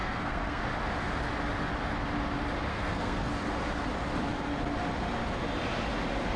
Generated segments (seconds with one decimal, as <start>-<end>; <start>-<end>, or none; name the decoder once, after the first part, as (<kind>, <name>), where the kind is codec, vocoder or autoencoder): 0.0-0.6 (codec, SNAC); 2.7-3.3